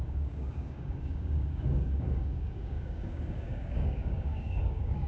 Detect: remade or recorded remade